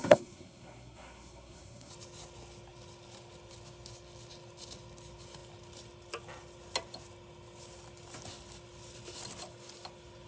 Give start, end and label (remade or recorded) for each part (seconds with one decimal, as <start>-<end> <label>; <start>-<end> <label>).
0.0-1.9 remade; 1.9-10.3 recorded